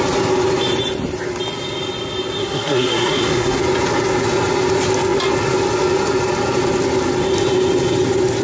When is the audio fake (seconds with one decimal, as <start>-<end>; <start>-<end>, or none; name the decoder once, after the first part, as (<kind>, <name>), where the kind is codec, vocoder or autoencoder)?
2.4-3.6 (codec, SNAC)